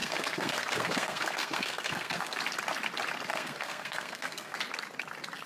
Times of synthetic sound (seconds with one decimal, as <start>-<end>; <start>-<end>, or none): 0.0-2.4; 3.3-4.6